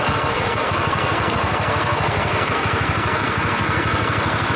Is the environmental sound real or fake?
fake